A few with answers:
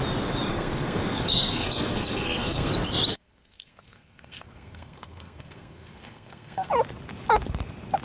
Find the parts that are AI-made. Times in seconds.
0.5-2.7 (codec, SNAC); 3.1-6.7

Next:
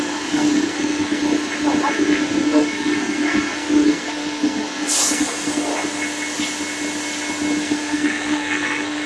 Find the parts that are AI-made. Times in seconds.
0.0-1.2 (codec, SNAC); 1.9-5.7; 7.6-9.1

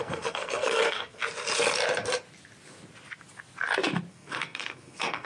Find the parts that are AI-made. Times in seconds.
0.0-1.2 (codec, SNAC); 4.1-5.3

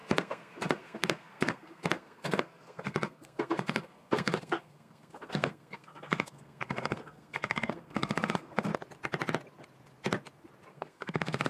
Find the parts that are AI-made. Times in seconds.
0.0-8.7 (codec, SNAC); 10.7-11.5

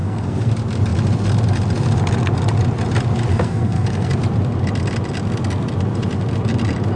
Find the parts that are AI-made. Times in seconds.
0.0-0.5 (codec, SNAC); 3.3-4.1

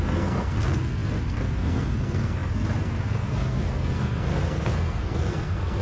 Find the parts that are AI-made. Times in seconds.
0.0-5.8 (codec, SNAC)